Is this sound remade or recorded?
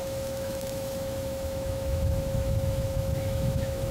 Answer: remade